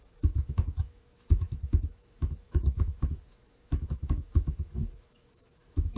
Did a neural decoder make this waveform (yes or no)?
yes